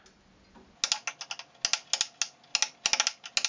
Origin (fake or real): real